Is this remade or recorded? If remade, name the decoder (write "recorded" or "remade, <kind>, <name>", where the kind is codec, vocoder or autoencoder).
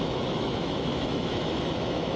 remade, autoencoder, DAC-VAE